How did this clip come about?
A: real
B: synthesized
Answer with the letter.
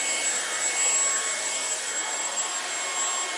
A